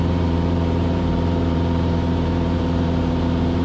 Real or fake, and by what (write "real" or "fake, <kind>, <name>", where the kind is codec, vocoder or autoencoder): fake, vocoder, BigVGAN v2